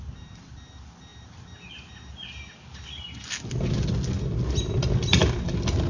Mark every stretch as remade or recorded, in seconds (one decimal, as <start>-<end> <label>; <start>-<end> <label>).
0.0-5.9 recorded